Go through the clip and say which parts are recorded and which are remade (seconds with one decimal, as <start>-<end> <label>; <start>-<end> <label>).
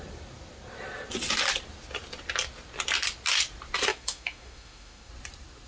0.0-3.9 recorded; 3.9-5.1 remade; 5.1-5.7 recorded